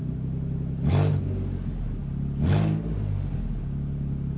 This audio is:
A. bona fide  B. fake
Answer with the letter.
A